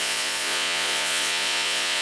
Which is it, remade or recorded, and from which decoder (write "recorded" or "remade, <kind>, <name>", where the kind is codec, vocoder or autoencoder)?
remade, vocoder, Vocos